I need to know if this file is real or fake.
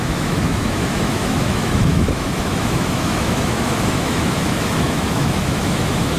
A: fake